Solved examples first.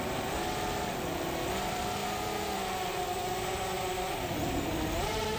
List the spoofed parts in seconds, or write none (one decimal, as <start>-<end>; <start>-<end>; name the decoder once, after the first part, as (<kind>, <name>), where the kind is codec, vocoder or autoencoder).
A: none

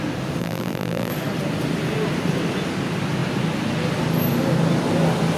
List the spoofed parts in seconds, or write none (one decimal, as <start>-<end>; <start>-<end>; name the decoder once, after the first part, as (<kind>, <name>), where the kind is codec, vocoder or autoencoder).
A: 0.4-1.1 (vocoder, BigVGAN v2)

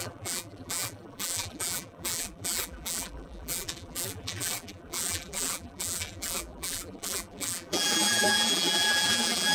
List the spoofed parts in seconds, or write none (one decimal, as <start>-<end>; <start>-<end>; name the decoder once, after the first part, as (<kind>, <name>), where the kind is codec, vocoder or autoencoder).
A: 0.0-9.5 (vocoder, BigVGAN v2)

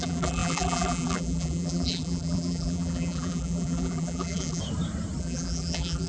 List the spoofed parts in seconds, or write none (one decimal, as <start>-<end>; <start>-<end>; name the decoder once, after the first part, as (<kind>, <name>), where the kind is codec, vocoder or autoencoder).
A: 0.0-4.6 (vocoder, BigVGAN v2); 5.2-6.1